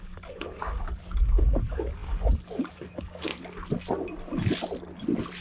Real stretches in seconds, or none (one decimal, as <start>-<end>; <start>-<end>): 3.3-5.4